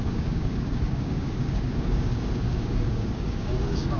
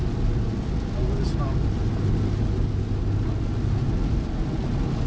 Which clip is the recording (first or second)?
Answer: second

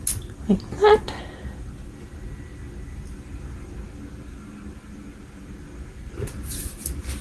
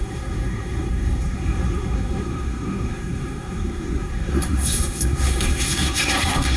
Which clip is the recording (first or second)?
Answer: first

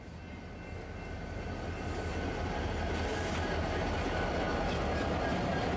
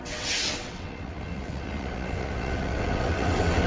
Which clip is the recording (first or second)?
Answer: first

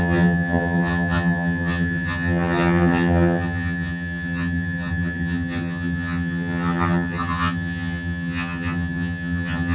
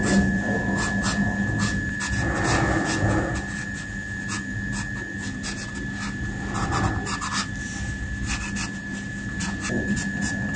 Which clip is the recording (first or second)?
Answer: second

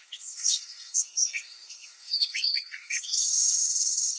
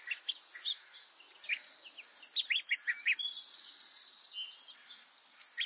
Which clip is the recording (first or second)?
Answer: second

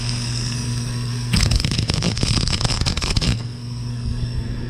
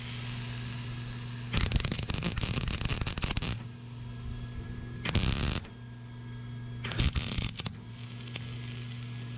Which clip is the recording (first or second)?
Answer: second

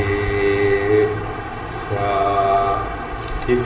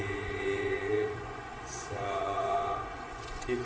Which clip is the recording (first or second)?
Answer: first